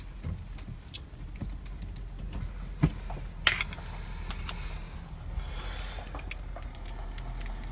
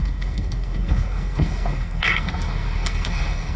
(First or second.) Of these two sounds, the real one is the first